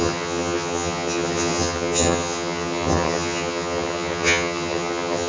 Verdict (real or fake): fake